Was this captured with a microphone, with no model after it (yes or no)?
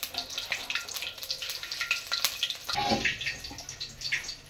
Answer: yes